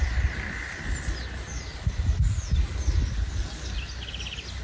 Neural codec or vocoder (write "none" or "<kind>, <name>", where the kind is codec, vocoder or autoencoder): none